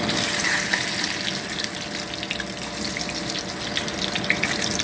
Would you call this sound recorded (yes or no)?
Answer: yes